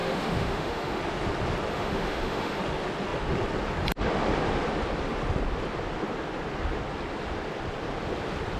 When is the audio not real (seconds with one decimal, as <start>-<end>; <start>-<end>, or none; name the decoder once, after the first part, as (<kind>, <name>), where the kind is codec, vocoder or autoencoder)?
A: 0.0-1.0 (autoencoder, DAC-VAE); 1.7-2.6